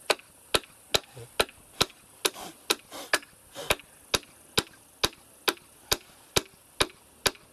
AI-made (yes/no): no